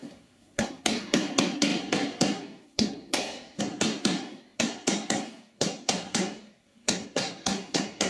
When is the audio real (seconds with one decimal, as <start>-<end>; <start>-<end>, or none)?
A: none